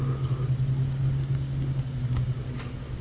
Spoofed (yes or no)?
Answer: no